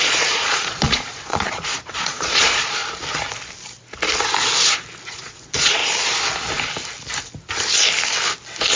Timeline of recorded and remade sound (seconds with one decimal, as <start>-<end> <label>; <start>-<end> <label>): 0.0-2.8 remade; 2.8-5.1 recorded; 5.1-5.8 remade; 5.8-8.8 recorded

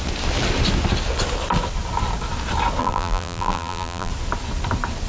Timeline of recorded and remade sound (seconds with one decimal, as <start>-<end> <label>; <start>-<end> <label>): 0.0-2.8 recorded; 2.8-4.1 remade; 4.1-5.1 recorded

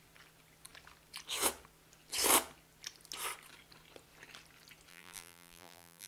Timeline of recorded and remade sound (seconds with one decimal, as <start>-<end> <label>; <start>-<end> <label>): 0.0-4.9 recorded; 4.9-6.1 remade

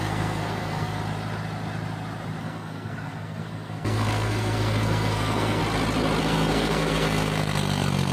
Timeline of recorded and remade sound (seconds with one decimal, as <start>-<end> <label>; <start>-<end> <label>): 0.0-1.0 remade; 1.0-2.4 recorded; 2.4-5.6 remade; 5.6-6.2 recorded; 6.2-8.1 remade

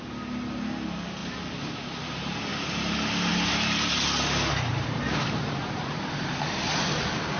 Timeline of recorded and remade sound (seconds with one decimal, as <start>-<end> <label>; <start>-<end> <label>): 0.0-7.4 recorded

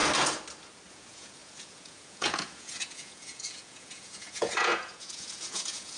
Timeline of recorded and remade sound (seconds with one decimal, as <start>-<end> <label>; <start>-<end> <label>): 0.0-0.9 recorded; 0.9-6.0 remade